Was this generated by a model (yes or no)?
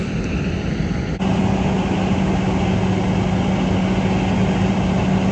no